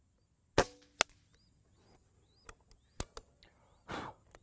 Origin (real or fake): real